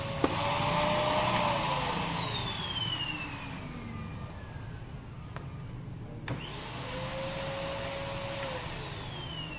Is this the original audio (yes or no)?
yes